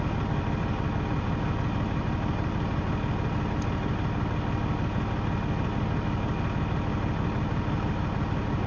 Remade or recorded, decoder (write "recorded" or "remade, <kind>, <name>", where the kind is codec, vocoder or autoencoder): recorded